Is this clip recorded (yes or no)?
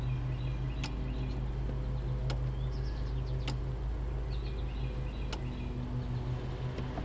yes